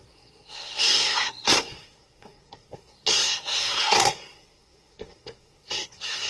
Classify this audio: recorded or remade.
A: remade